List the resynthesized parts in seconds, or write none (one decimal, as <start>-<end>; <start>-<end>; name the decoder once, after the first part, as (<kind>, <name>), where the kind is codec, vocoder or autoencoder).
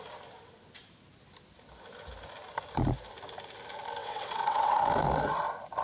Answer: 4.0-4.8 (vocoder, WaveNeXt)